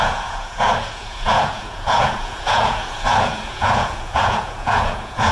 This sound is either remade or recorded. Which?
remade